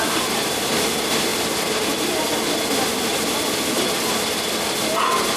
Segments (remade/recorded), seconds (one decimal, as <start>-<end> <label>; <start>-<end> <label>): 0.0-5.4 recorded